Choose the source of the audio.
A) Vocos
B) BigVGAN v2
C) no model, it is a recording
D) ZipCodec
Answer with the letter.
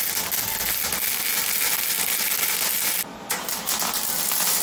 C